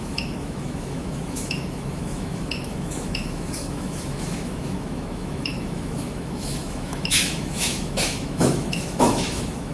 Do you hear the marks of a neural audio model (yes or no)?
yes